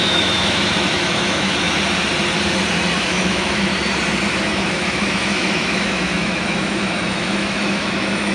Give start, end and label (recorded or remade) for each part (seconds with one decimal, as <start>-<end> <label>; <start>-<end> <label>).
0.0-1.5 remade; 1.5-3.0 recorded; 3.0-3.7 remade; 3.7-4.3 recorded; 4.3-8.3 remade